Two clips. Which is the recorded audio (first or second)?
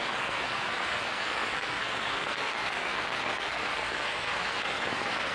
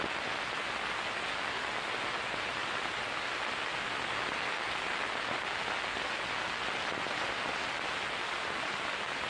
second